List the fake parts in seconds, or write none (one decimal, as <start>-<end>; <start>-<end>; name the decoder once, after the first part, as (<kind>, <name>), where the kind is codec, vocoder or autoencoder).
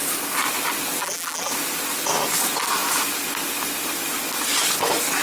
1.0-1.5 (vocoder, BigVGAN v2)